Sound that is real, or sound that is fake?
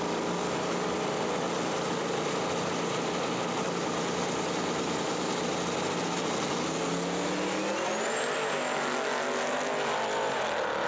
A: real